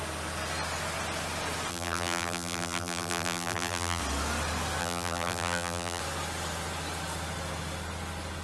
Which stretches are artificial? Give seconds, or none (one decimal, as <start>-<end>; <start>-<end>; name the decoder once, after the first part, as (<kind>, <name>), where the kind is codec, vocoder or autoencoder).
1.7-4.0 (vocoder, BigVGAN v2); 4.8-6.0